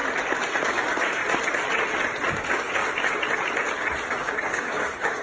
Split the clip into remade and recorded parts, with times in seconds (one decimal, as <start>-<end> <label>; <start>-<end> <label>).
0.0-0.6 recorded; 0.6-1.2 remade; 1.2-2.3 recorded; 2.3-2.8 remade; 2.8-4.1 recorded; 4.1-5.2 remade

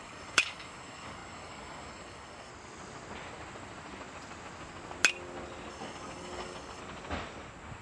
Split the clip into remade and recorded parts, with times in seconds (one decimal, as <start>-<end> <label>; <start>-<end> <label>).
0.0-2.5 remade; 2.5-5.7 recorded; 5.7-6.8 remade; 6.8-7.8 recorded

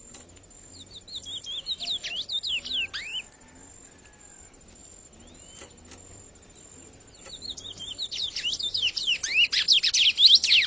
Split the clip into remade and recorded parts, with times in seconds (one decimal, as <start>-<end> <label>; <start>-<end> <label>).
0.0-10.7 recorded

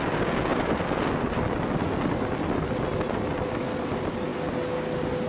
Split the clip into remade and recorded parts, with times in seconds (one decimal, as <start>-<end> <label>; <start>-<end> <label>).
0.0-5.3 recorded

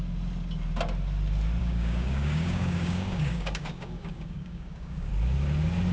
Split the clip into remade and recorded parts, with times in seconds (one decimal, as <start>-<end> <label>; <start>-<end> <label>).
0.0-1.6 recorded; 1.6-5.1 remade; 5.1-5.9 recorded

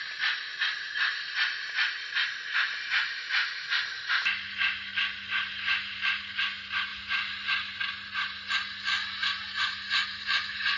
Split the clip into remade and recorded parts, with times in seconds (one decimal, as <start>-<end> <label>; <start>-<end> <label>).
0.0-10.8 recorded